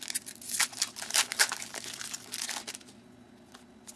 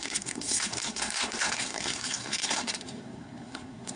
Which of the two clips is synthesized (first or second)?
second